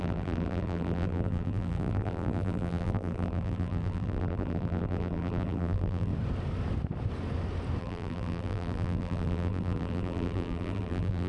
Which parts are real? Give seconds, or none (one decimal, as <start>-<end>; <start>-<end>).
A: 6.1-7.8